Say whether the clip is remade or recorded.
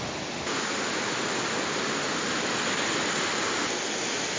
recorded